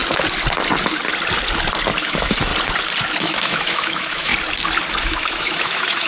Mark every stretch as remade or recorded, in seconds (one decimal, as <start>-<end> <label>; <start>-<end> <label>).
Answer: 0.0-2.0 recorded; 2.0-2.5 remade; 2.5-3.2 recorded; 3.2-4.3 remade; 4.3-5.0 recorded; 5.0-6.1 remade